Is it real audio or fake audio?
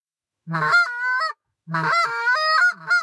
fake